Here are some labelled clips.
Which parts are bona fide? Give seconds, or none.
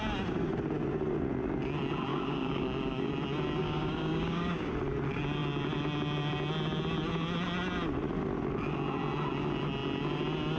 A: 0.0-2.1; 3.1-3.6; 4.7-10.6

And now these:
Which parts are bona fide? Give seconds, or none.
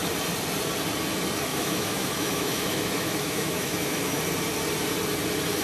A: 0.0-1.5; 4.2-5.6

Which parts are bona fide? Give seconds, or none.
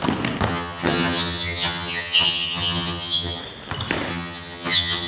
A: 0.0-0.5; 3.4-4.1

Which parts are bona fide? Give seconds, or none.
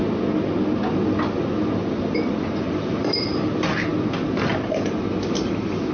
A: 0.0-5.9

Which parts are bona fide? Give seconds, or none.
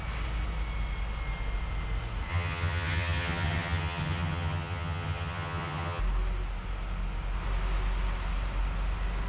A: 0.0-2.3; 6.0-9.3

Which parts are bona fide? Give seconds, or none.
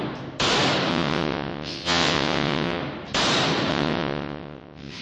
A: 0.0-0.9; 2.8-3.7